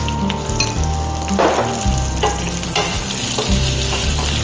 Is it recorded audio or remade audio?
recorded